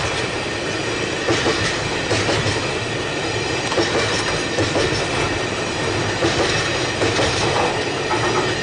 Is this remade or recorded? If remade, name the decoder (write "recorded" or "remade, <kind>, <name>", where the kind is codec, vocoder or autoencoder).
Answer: recorded